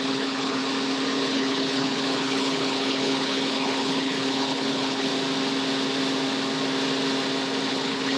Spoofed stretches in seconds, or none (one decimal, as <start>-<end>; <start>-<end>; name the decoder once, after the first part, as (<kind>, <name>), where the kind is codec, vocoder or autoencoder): 0.0-0.6 (codec, HILCodec); 1.2-5.1; 7.7-8.2